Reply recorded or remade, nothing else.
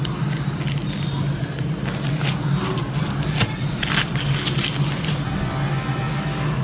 recorded